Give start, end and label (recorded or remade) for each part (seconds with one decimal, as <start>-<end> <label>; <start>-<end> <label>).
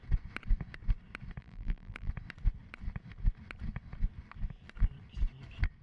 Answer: 0.0-1.4 recorded; 1.4-2.1 remade; 2.1-5.8 recorded